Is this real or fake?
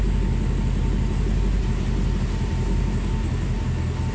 real